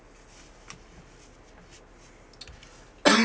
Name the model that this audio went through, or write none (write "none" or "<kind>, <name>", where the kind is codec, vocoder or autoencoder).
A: none